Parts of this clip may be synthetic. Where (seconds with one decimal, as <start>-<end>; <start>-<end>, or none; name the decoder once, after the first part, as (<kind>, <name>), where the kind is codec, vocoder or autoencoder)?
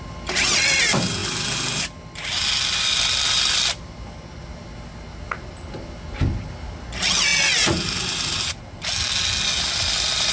none